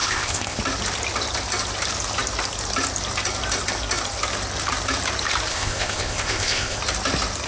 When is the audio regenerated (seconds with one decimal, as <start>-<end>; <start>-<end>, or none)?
0.0-0.6; 5.5-6.8